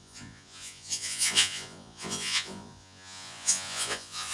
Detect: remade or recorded remade